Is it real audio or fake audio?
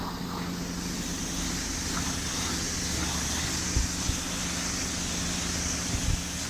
real